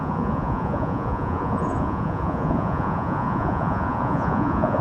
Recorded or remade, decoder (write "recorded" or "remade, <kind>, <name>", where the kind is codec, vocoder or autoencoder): remade, vocoder, Vocos